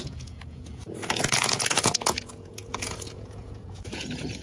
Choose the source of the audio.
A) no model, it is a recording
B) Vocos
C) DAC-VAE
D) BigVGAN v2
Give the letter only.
B